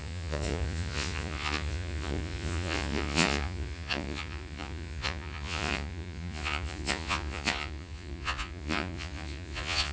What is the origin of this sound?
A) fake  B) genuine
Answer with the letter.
A